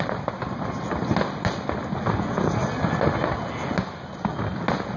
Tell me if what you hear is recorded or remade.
recorded